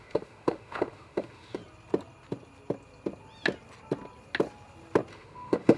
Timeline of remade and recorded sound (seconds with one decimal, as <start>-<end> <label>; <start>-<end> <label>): 0.0-1.6 remade; 1.6-5.1 recorded; 5.1-5.8 remade

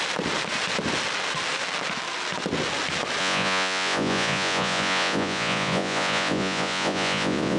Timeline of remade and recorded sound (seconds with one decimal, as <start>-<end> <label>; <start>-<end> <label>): 0.0-3.2 recorded; 3.2-7.6 remade

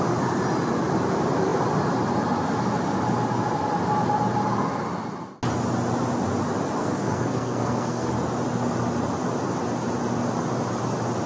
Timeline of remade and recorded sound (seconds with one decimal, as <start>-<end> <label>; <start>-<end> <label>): 0.0-6.8 recorded; 6.8-8.1 remade; 8.1-11.3 recorded

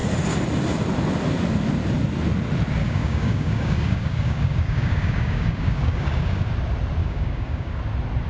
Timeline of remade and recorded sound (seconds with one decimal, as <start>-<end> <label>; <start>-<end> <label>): 0.0-2.8 recorded; 2.8-6.5 remade; 6.5-7.0 recorded; 7.0-7.8 remade; 7.8-8.3 recorded